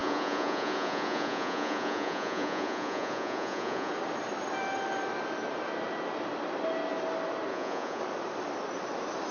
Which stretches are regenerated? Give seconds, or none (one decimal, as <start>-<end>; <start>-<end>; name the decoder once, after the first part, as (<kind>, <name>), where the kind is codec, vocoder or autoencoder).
0.0-3.9 (vocoder, Vocos); 7.5-8.0